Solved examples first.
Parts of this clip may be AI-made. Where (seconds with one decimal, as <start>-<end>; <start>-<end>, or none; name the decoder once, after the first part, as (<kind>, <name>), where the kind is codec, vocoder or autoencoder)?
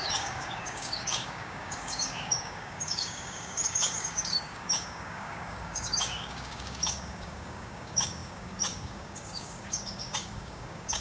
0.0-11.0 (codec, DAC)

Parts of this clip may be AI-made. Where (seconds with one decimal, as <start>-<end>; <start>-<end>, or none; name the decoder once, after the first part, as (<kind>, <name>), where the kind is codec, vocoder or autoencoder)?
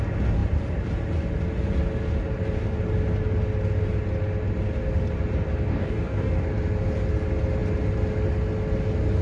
5.7-6.3 (codec, DAC)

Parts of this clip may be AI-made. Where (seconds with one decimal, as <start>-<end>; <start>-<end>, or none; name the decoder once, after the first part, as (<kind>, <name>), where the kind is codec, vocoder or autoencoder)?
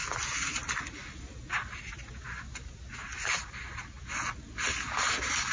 none